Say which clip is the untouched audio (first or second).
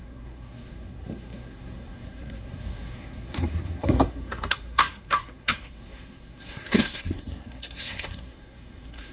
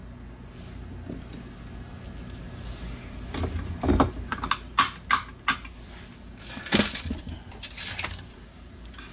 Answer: second